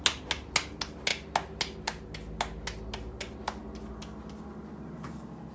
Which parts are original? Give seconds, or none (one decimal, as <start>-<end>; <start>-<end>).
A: 0.0-5.5